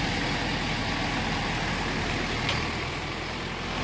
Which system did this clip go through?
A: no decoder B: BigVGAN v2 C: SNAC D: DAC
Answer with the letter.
A